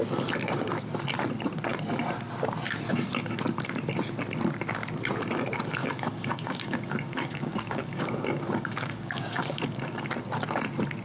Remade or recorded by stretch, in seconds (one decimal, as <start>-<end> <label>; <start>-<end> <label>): 0.0-5.8 recorded; 5.8-10.1 remade; 10.1-11.0 recorded